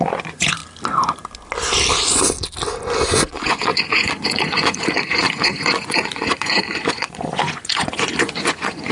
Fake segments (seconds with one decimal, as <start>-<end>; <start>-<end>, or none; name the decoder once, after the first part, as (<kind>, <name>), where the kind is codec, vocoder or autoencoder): 0.0-0.6 (vocoder, Vocos); 3.1-8.9